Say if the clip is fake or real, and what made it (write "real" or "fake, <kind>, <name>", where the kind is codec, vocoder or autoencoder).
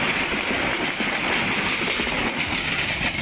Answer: real